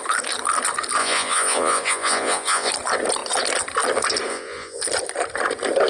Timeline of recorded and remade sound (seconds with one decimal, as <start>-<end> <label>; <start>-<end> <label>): 0.0-1.0 recorded; 1.0-2.7 remade; 2.7-4.3 recorded; 4.3-4.8 remade; 4.8-5.9 recorded